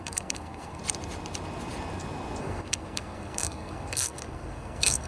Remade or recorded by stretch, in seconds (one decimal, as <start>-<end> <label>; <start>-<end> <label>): 0.0-0.8 remade; 0.8-2.4 recorded; 2.4-5.1 remade